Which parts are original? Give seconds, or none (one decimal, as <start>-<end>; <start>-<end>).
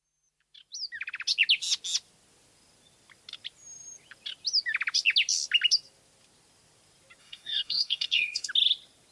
0.0-7.2; 8.5-9.1